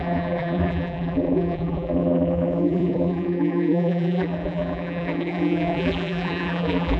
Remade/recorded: remade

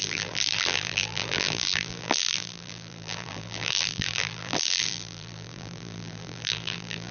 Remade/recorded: remade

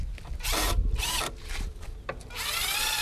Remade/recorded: recorded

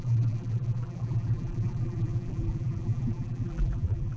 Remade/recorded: remade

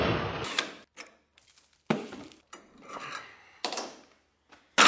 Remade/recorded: recorded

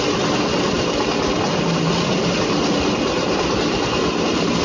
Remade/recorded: recorded